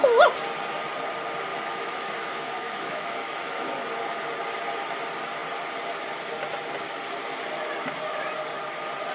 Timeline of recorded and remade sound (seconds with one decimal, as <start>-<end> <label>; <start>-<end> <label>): 0.0-1.5 recorded; 1.5-3.8 remade; 3.8-9.1 recorded